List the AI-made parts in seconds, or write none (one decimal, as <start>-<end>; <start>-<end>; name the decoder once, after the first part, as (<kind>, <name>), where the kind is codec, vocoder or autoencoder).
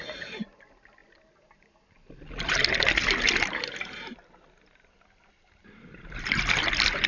none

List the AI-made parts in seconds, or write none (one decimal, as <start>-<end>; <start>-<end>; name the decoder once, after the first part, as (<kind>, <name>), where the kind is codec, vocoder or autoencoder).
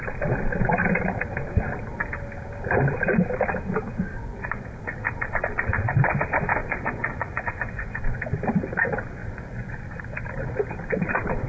4.2-4.8 (vocoder, Vocos); 6.6-8.0; 9.2-9.8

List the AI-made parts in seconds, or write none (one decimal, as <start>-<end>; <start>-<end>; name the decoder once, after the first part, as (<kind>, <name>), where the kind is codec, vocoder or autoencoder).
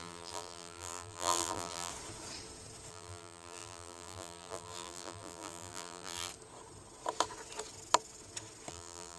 0.0-1.9 (vocoder, BigVGAN v2); 2.9-6.3; 8.7-9.2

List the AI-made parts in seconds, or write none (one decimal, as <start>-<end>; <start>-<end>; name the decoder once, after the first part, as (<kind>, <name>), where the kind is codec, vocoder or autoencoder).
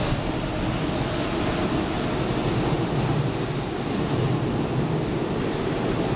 none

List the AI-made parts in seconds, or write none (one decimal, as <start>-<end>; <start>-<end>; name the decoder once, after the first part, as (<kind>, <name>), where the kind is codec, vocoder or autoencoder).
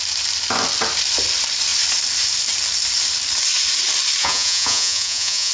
4.2-5.5 (vocoder, Vocos)